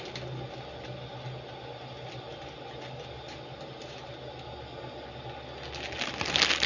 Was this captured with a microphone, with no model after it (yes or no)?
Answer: yes